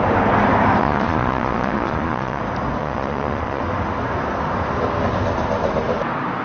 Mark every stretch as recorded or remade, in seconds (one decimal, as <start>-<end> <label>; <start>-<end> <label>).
0.0-0.8 recorded; 0.8-2.4 remade; 2.4-2.8 recorded; 2.8-3.6 remade; 3.6-6.4 recorded